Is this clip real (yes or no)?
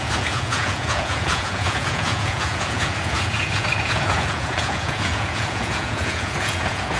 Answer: no